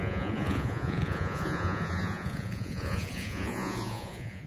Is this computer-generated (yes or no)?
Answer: yes